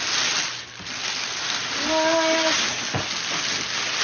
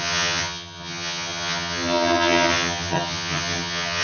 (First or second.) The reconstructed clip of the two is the second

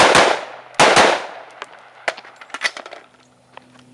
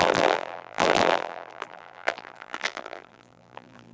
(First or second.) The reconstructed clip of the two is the second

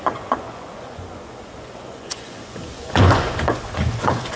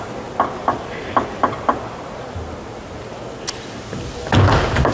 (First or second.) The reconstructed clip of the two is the first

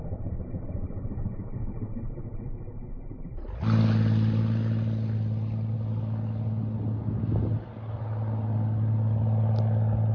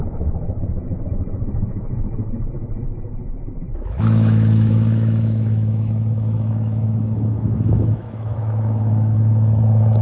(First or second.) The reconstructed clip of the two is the second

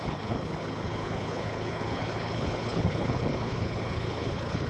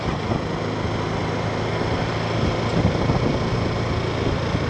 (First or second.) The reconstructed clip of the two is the first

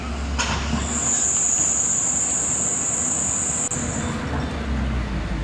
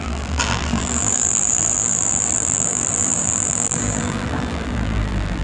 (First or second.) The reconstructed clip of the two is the second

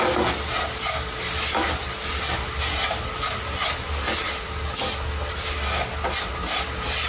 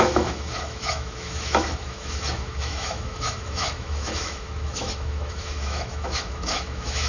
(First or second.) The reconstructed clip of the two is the second